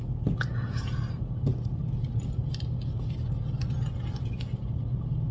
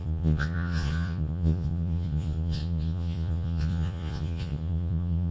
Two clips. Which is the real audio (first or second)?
first